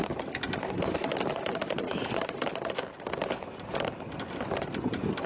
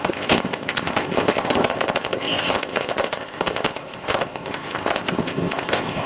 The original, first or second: first